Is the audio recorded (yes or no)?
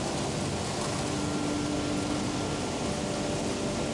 yes